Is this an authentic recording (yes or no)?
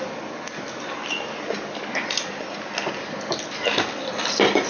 yes